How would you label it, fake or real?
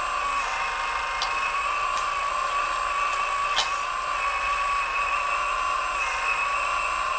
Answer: real